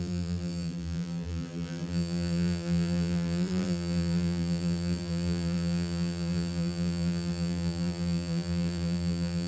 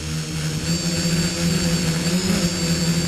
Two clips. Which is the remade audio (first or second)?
first